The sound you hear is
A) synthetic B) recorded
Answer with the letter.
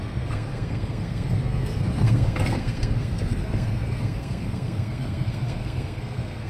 A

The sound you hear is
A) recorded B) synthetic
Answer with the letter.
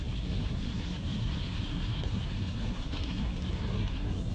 B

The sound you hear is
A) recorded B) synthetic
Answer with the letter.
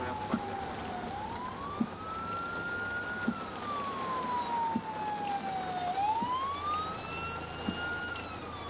A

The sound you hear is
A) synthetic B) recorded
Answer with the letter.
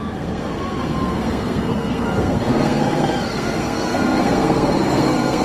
A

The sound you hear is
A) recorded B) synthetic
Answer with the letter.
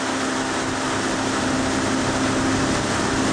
A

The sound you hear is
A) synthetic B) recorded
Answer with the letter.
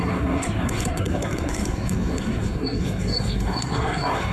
A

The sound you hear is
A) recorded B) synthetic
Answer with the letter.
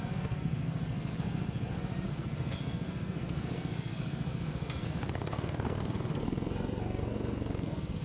B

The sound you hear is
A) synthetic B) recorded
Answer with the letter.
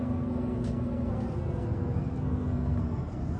A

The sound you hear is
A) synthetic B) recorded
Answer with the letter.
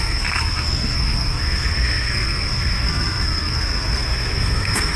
A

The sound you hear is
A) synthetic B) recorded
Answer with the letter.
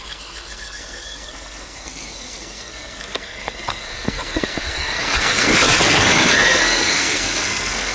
A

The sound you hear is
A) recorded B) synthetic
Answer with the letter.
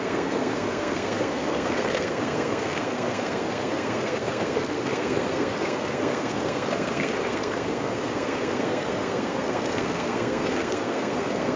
B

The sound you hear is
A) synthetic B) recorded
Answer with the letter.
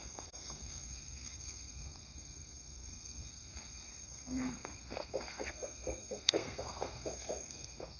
A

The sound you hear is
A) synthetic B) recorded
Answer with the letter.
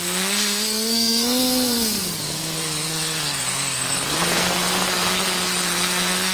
A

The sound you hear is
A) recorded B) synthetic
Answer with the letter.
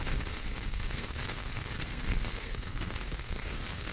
B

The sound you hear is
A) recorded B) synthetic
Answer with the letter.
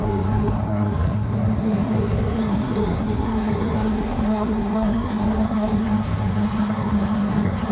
B